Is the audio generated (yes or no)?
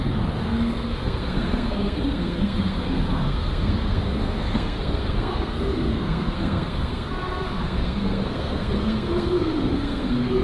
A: yes